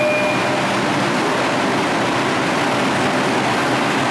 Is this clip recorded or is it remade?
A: recorded